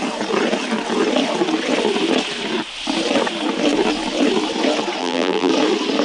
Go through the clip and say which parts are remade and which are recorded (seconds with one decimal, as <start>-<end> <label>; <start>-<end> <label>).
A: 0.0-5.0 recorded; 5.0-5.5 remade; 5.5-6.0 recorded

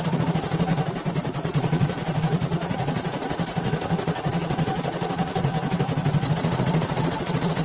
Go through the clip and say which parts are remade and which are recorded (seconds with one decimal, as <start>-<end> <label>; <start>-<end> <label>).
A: 0.0-0.7 remade; 0.7-1.2 recorded; 1.2-5.5 remade; 5.5-6.3 recorded; 6.3-7.6 remade

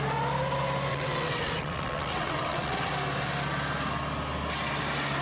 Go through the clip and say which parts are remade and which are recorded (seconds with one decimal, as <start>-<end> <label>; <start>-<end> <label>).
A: 0.0-0.9 recorded; 0.9-2.9 remade; 2.9-5.2 recorded

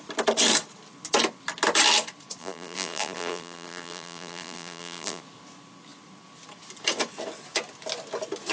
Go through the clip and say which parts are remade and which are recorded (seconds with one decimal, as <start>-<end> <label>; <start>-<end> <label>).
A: 0.0-2.4 recorded; 2.4-5.2 remade; 5.2-8.5 recorded

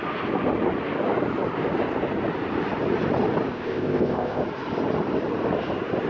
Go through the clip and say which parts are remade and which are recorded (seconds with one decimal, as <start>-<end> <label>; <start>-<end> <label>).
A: 0.0-3.5 recorded; 3.5-4.4 remade; 4.4-6.1 recorded

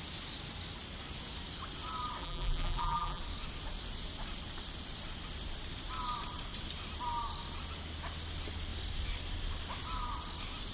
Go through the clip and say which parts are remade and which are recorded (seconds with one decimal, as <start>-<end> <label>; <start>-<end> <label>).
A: 0.0-2.2 recorded; 2.2-3.2 remade; 3.2-10.7 recorded

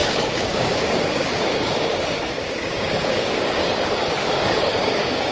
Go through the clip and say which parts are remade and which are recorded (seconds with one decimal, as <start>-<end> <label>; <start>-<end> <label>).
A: 0.0-5.3 remade

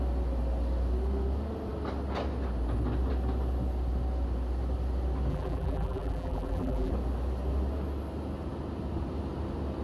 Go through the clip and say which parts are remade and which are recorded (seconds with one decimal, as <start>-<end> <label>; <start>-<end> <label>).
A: 0.0-5.3 recorded; 5.3-6.9 remade; 6.9-9.8 recorded